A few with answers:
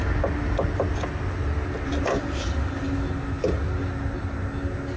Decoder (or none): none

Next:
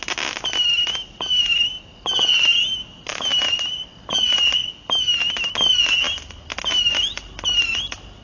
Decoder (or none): none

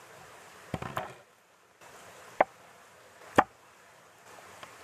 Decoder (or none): none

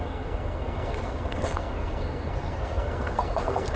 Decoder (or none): codec, SNAC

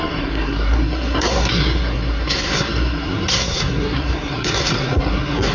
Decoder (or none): codec, SNAC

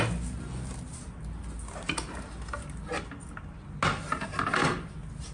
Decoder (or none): none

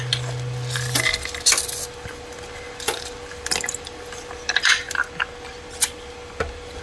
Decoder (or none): none